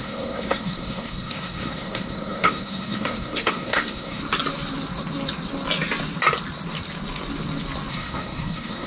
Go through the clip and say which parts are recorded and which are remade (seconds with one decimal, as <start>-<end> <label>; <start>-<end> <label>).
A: 0.0-4.2 remade; 4.2-7.9 recorded; 7.9-8.9 remade